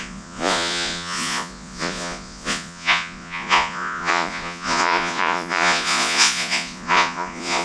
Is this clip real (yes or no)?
no